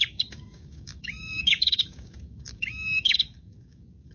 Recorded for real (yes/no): no